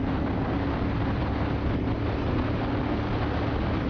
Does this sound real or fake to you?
real